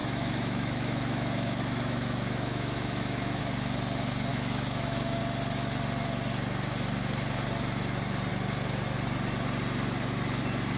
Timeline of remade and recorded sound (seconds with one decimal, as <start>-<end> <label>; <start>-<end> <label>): 0.0-3.4 remade; 3.4-4.3 recorded; 4.3-5.2 remade; 5.2-10.8 recorded